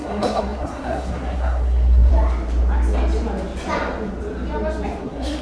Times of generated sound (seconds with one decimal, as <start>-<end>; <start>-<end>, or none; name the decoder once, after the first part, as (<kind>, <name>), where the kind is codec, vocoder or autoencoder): 0.0-2.1 (codec, SNAC); 5.0-5.4